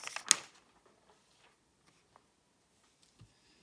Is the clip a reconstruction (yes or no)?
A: no